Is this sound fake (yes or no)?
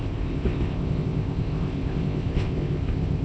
yes